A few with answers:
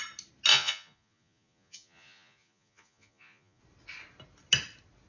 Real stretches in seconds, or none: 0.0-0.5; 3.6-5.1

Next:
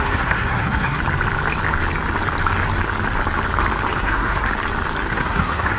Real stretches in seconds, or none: 1.0-4.0; 4.4-5.1

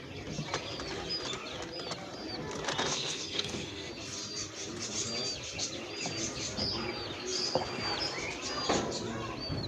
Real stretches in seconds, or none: 0.0-2.9; 3.9-9.7

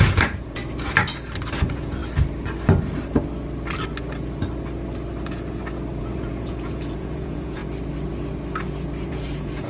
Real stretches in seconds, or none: 0.6-1.6; 2.0-6.0; 7.6-9.1

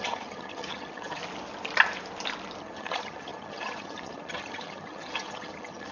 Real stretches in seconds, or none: 1.2-2.6

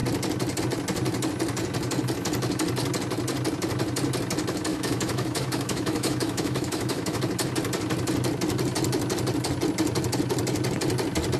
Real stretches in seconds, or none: 0.0-4.7; 7.2-11.4

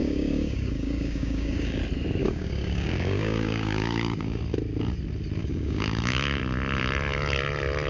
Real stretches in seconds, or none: 1.8-2.2; 4.4-5.4; 6.4-7.9

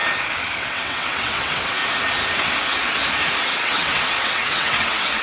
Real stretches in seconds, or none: 0.0-0.6; 1.8-3.4